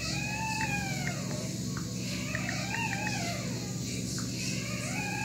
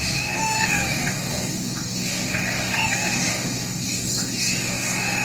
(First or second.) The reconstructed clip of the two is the second